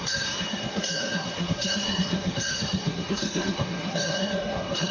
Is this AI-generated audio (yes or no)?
yes